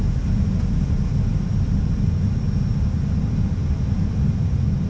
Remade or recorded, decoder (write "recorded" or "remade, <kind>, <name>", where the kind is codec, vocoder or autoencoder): recorded